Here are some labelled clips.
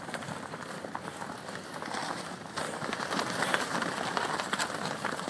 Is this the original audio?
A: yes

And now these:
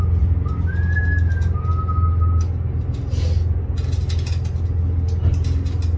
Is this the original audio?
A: yes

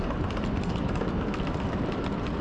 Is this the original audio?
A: yes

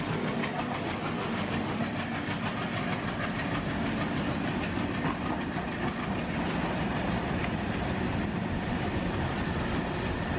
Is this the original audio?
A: no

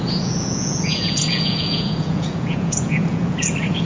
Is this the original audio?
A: no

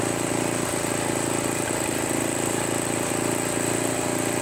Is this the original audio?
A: yes